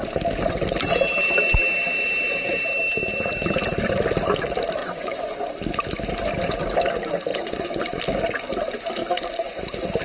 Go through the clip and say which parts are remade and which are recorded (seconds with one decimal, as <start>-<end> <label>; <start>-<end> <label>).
0.0-4.8 recorded; 4.8-5.5 remade; 5.5-7.3 recorded; 7.3-8.0 remade; 8.0-9.0 recorded; 9.0-9.6 remade; 9.6-10.0 recorded